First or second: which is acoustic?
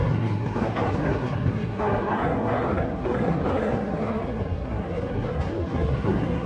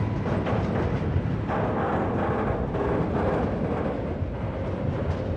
second